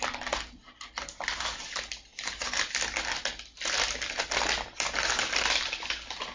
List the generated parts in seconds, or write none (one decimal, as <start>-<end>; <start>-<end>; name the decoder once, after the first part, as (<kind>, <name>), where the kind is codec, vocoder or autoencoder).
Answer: 0.6-1.4 (vocoder, BigVGAN v2)